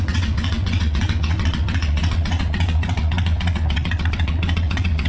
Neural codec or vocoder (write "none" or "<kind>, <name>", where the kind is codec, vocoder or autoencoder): vocoder, WaveNeXt